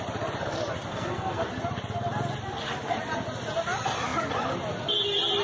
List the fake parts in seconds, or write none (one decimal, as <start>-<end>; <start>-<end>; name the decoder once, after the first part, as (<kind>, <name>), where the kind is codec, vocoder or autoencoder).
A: 0.9-1.5 (codec, SNAC)